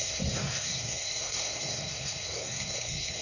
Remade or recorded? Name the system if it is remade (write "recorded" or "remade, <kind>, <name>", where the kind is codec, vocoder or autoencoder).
remade, codec, SNAC